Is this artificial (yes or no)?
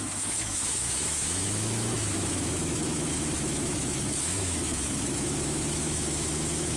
yes